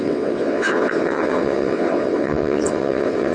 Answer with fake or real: fake